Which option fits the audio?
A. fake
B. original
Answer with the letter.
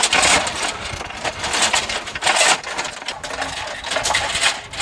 B